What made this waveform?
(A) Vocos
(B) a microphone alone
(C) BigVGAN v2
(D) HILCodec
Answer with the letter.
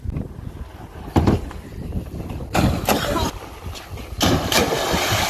B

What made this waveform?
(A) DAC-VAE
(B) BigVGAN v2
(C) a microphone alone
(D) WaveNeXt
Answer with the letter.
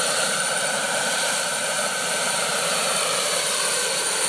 B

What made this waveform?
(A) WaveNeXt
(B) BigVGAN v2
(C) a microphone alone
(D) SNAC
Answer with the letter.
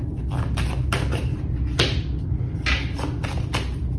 C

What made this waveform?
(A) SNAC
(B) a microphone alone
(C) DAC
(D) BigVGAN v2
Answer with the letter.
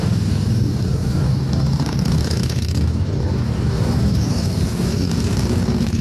C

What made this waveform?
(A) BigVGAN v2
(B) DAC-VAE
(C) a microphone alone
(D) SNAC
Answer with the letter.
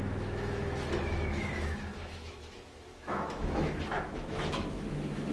B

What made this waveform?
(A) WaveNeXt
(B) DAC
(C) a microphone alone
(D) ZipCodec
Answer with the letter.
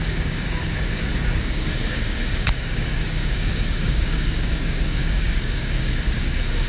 B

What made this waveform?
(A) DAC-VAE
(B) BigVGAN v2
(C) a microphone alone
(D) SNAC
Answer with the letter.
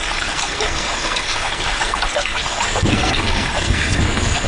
D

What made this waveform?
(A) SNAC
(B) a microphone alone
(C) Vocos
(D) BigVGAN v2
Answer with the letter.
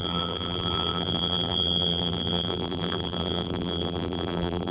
D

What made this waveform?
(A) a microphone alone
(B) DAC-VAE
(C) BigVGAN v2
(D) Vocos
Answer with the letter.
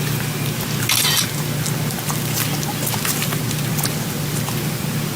A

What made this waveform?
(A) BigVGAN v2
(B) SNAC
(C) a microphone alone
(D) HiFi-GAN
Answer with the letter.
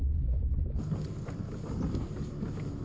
C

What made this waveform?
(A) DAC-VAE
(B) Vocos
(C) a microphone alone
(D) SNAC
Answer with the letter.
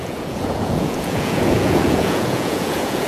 B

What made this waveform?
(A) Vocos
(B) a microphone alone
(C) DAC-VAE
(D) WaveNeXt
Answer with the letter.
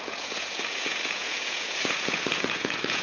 A